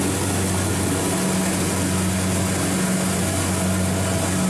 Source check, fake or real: real